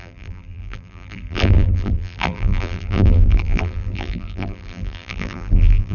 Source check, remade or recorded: remade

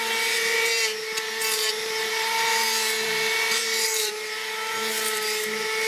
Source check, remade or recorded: remade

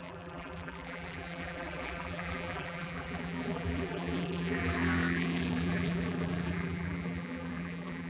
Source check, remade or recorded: remade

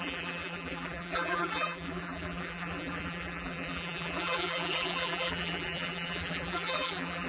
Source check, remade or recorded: remade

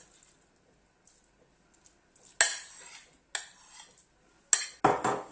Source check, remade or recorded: recorded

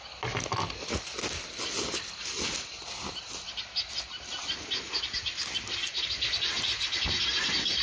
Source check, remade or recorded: recorded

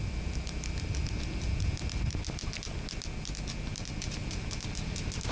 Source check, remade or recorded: recorded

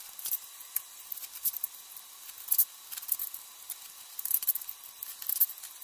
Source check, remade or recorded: remade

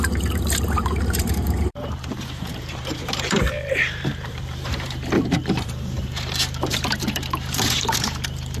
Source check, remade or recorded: remade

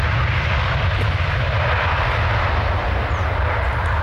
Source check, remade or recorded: recorded